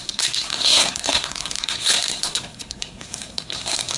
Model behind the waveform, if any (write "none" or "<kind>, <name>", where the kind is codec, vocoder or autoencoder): codec, SNAC